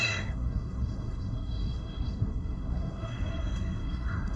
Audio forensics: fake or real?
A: fake